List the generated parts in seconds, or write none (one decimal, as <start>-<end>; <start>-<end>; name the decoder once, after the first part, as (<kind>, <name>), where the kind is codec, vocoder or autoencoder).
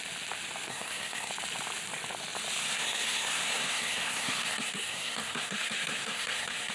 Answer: 0.7-1.3 (codec, SNAC); 2.6-6.7